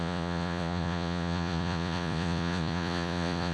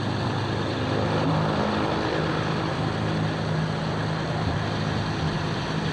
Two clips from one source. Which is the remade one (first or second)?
first